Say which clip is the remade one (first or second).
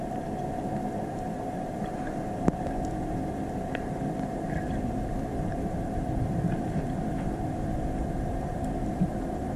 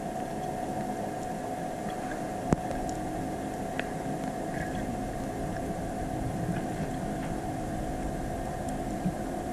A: first